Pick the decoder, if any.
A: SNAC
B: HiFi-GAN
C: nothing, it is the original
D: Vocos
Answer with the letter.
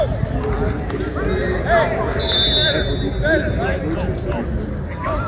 C